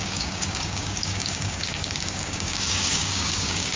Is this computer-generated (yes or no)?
yes